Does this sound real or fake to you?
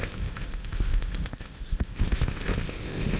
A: fake